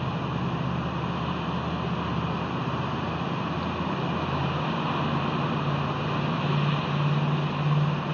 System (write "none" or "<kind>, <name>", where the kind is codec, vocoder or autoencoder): none